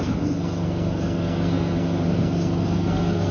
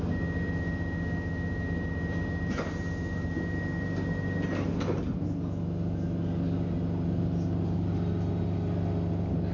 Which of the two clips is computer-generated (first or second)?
first